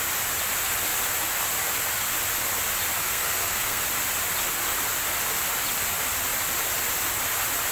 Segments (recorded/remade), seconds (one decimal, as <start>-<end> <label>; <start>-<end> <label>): 0.0-3.0 recorded; 3.0-3.8 remade; 3.8-7.7 recorded